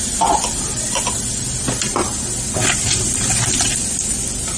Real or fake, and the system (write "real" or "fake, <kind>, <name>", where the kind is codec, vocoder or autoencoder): real